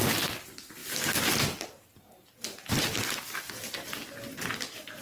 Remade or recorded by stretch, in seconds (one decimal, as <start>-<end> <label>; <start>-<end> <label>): 0.0-5.0 recorded